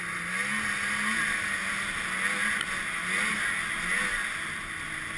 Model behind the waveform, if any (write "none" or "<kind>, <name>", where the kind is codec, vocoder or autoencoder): none